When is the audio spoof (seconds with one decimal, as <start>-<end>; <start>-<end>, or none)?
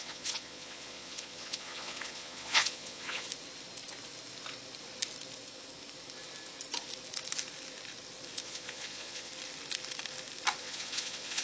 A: 0.0-3.3; 8.4-9.3; 10.6-11.4